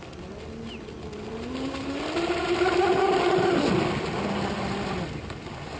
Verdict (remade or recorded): recorded